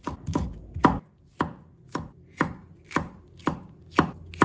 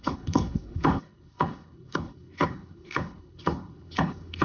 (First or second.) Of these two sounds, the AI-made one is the second